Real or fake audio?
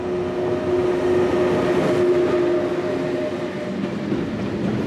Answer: real